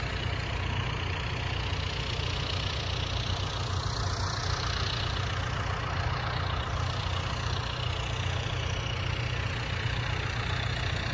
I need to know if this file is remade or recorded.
recorded